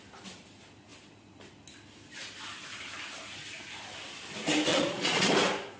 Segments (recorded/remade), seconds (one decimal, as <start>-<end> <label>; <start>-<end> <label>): 0.0-4.7 recorded; 4.7-5.3 remade; 5.3-5.8 recorded